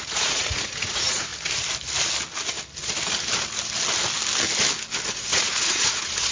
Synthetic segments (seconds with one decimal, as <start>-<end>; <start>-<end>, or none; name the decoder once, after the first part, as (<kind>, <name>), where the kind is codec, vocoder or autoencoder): 0.0-1.3 (vocoder, Vocos); 5.1-6.3